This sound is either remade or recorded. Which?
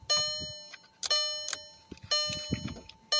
recorded